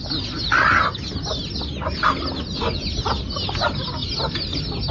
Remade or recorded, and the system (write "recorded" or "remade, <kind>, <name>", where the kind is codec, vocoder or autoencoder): recorded